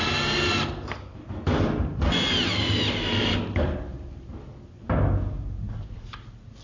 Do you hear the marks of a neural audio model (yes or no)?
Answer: no